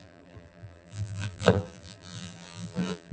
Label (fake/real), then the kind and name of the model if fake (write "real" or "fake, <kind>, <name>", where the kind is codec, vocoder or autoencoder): fake, vocoder, BigVGAN v2